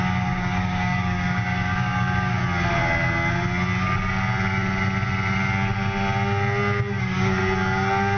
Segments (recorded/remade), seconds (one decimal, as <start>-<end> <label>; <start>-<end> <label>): 0.0-2.4 remade; 2.4-7.0 recorded; 7.0-7.4 remade; 7.4-8.2 recorded